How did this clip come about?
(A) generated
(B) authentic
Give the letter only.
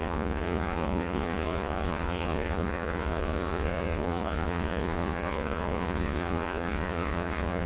A